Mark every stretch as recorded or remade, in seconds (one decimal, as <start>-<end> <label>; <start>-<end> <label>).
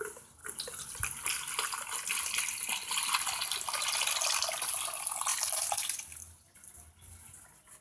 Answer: 0.0-7.8 recorded